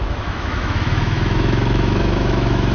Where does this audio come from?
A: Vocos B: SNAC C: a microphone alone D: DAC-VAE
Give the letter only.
D